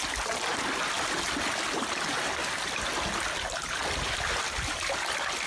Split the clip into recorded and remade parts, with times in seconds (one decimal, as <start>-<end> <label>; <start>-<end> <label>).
0.0-5.5 recorded